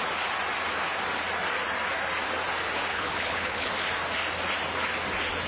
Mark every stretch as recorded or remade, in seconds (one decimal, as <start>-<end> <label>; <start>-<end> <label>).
0.0-2.9 recorded; 2.9-3.7 remade; 3.7-5.5 recorded